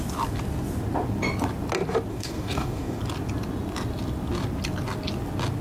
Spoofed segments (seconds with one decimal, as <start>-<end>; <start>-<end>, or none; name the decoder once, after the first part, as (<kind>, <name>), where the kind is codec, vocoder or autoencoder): 2.1-3.0 (codec, DAC)